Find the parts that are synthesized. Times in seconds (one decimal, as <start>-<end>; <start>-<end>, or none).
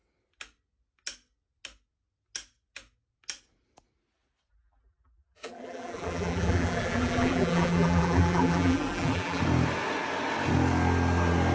4.5-9.4